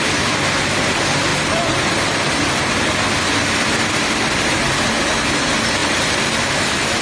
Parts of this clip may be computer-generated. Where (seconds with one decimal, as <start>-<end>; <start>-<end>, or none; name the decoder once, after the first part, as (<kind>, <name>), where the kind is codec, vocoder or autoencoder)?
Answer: 1.3-2.6 (vocoder, BigVGAN v2); 5.8-7.0